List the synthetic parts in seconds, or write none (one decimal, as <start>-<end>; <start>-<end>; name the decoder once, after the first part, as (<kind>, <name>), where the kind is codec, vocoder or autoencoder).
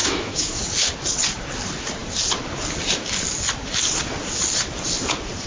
0.0-0.6 (autoencoder, DAC-VAE)